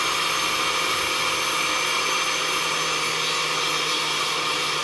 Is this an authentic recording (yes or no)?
yes